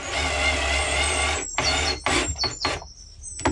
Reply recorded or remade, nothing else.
recorded